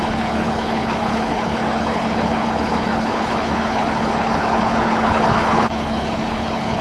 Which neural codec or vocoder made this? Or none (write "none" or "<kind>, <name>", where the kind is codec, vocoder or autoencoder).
codec, HILCodec